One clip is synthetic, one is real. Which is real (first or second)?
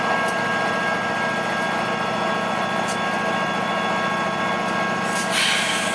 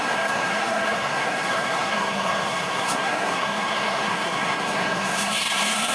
first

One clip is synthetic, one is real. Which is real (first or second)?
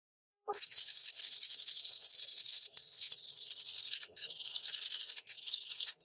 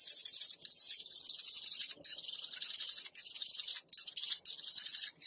second